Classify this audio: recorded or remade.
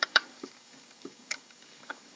remade